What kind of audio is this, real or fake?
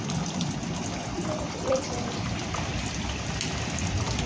real